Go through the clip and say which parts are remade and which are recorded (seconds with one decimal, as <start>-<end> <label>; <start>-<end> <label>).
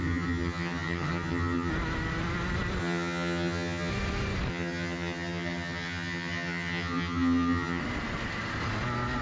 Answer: 0.0-1.7 remade; 1.7-2.8 recorded; 2.8-3.9 remade; 3.9-4.5 recorded; 4.5-7.8 remade; 7.8-9.2 recorded